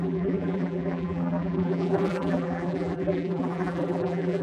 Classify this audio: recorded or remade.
remade